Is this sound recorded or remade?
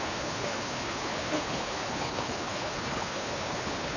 remade